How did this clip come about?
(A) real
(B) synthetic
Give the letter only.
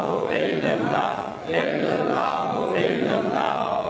B